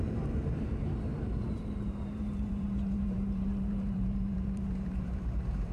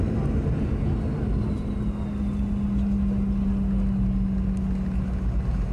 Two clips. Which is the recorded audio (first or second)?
second